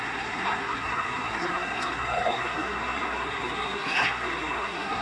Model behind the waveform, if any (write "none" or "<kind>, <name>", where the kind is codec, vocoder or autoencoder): codec, SNAC